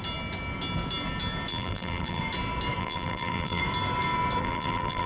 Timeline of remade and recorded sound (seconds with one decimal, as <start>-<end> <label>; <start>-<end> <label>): 0.0-1.5 recorded; 1.5-2.2 remade; 2.2-2.8 recorded; 2.8-3.6 remade; 3.6-4.4 recorded; 4.4-5.1 remade